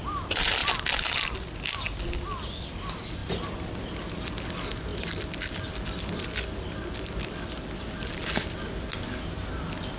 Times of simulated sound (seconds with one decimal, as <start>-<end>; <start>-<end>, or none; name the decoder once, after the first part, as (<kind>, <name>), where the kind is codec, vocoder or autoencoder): 3.2-3.8 (vocoder, BigVGAN v2); 4.9-8.3